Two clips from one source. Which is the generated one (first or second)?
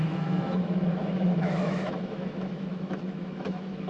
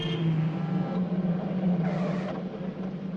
first